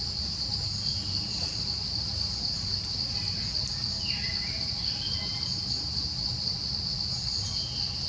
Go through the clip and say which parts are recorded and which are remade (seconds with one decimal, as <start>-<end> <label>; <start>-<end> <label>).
0.0-8.1 recorded